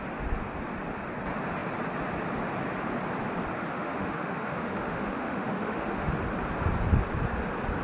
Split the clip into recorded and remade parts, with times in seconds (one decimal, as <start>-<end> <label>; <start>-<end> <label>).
0.0-3.7 recorded; 3.7-6.1 remade; 6.1-7.8 recorded